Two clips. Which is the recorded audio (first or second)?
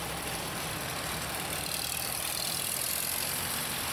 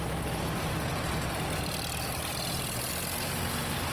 second